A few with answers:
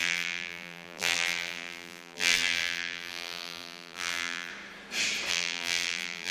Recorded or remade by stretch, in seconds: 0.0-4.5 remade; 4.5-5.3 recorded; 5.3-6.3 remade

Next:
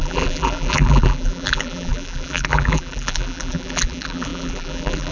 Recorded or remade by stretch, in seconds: 0.0-5.1 remade

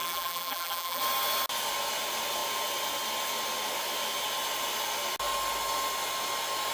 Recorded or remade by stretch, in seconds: 0.0-1.0 remade; 1.0-6.7 recorded

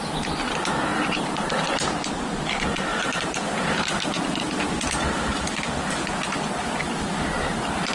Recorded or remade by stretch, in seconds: 0.0-0.9 recorded; 0.9-1.5 remade; 1.5-2.9 recorded; 2.9-4.8 remade; 4.8-7.9 recorded

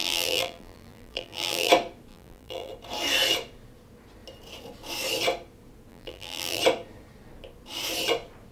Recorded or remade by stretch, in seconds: 0.0-1.7 remade; 1.7-2.1 recorded; 2.1-2.7 remade; 2.7-5.9 recorded; 5.9-6.6 remade; 6.6-8.5 recorded

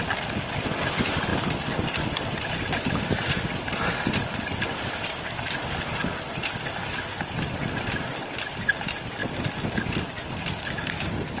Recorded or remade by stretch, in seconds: 0.0-1.3 recorded; 1.3-3.9 remade; 3.9-11.4 recorded

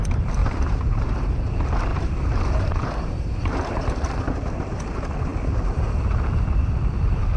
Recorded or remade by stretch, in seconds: 0.0-0.4 recorded; 0.4-1.0 remade; 1.0-1.9 recorded; 1.9-3.5 remade; 3.5-7.4 recorded

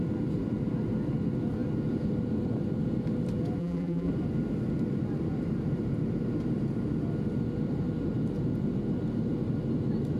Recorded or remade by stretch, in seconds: 0.0-3.6 recorded; 3.6-4.1 remade; 4.1-10.2 recorded